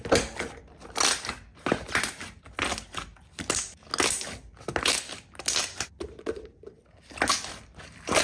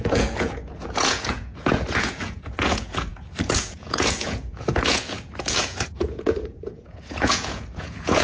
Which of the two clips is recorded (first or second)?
first